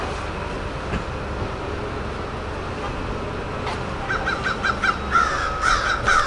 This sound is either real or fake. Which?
real